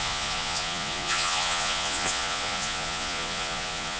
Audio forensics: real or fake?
fake